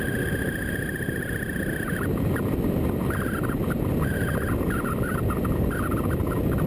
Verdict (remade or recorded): recorded